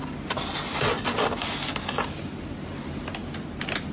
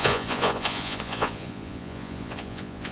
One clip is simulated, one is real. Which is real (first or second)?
first